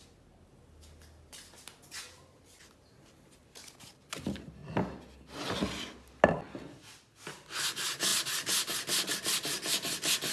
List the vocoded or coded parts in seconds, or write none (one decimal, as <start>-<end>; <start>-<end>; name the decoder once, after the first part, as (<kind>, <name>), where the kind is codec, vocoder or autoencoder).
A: none